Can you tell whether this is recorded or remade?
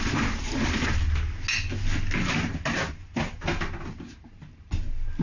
recorded